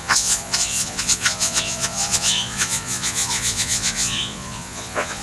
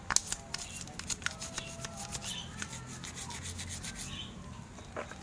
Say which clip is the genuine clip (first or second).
second